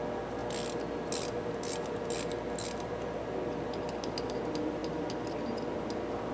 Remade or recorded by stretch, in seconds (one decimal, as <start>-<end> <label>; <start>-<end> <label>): 0.0-6.3 recorded